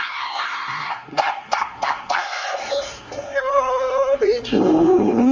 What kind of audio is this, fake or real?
fake